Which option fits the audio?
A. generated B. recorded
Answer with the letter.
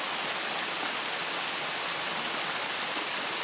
B